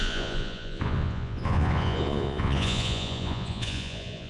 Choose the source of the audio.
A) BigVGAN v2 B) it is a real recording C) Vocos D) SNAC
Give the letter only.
C